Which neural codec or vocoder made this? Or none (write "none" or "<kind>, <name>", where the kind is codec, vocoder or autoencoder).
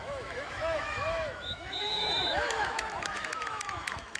autoencoder, DAC-VAE